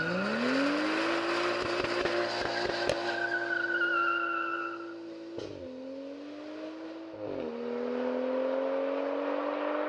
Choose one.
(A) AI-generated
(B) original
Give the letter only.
B